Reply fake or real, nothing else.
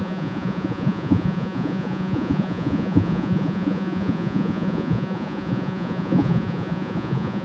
fake